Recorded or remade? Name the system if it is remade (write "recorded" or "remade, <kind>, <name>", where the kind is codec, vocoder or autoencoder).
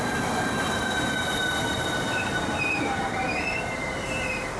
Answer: remade, vocoder, BigVGAN v2